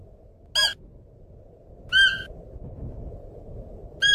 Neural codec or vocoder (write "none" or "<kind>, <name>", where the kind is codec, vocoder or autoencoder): none